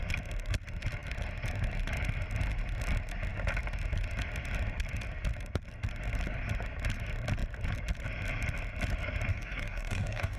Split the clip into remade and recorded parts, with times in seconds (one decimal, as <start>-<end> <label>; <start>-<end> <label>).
0.0-9.3 recorded; 9.3-10.4 remade